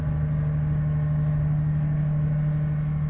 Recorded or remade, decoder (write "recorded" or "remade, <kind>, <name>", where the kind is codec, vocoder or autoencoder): recorded